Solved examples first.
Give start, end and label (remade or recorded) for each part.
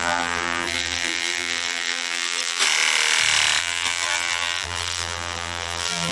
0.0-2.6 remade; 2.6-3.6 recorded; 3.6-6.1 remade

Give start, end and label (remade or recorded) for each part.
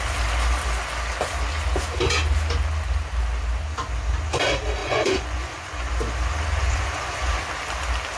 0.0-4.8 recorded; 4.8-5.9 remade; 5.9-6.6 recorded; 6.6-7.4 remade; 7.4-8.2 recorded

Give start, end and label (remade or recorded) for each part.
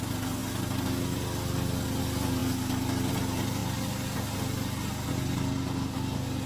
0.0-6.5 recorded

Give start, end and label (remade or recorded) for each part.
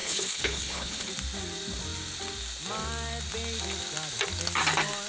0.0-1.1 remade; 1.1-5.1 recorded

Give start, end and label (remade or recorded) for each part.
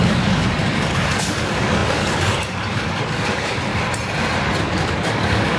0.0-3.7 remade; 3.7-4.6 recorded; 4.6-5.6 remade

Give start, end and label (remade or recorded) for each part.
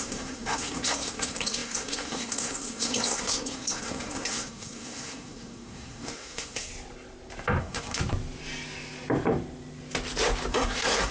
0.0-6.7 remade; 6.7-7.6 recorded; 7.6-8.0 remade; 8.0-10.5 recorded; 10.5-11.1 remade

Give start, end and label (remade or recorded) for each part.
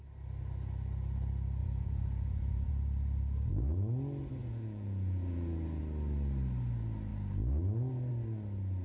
0.0-1.6 recorded; 1.6-2.7 remade; 2.7-4.4 recorded; 4.4-5.8 remade; 5.8-8.8 recorded